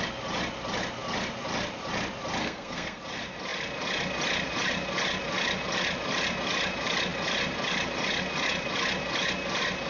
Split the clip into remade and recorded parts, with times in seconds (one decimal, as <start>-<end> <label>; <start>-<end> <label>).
0.0-2.4 recorded; 2.4-3.0 remade; 3.0-9.9 recorded